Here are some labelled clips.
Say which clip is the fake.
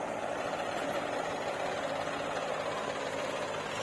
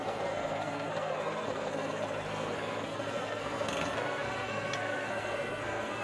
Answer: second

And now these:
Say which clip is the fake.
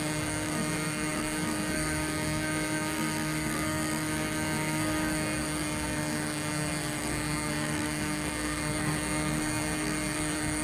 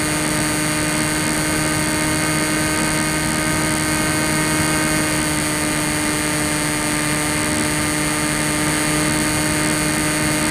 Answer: first